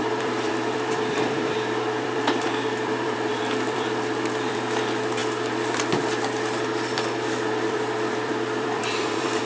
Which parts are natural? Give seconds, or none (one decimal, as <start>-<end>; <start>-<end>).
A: 5.2-7.7